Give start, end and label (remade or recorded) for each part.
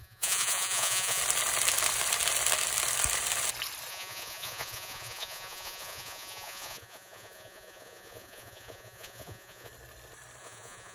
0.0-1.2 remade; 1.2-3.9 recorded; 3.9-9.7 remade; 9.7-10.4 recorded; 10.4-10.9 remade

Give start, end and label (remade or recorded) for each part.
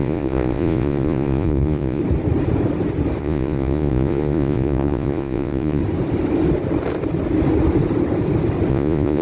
0.0-2.0 remade; 2.0-3.2 recorded; 3.2-5.8 remade; 5.8-8.7 recorded; 8.7-9.2 remade